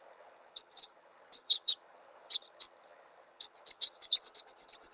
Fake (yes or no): yes